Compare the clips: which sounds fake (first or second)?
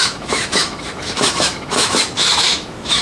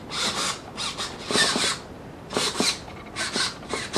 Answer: first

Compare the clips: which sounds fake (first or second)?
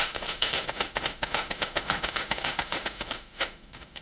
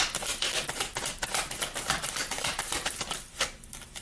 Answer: first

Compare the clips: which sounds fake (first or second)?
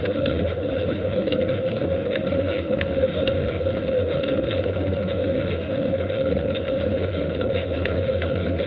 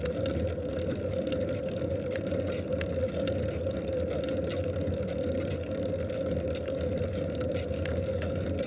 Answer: first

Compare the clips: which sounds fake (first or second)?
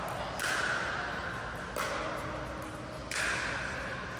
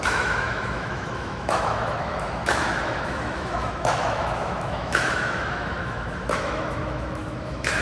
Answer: second